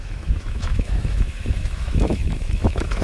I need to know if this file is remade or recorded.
remade